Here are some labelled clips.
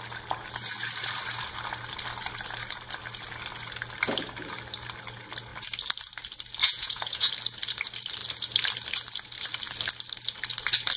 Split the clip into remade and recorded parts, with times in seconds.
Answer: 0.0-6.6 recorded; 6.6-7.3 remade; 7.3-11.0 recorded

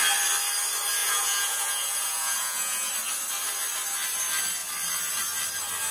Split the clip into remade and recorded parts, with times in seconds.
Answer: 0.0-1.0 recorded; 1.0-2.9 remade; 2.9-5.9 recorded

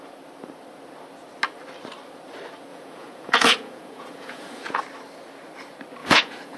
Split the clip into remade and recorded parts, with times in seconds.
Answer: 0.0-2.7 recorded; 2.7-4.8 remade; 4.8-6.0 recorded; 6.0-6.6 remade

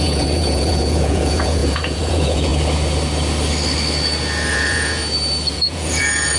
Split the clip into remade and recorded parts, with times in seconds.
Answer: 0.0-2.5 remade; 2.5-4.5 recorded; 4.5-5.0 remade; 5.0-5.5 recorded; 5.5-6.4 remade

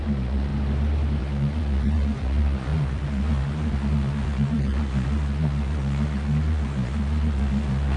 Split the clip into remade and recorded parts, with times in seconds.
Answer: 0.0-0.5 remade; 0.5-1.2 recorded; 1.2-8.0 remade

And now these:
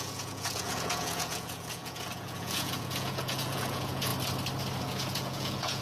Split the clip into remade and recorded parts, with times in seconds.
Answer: 0.0-4.1 remade; 4.1-4.8 recorded; 4.8-5.8 remade